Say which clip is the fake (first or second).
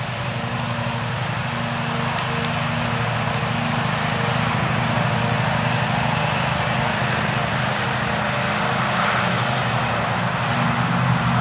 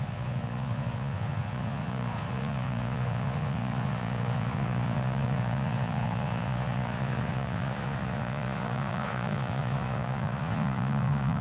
second